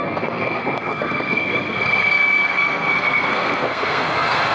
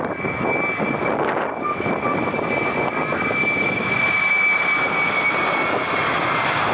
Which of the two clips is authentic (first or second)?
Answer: second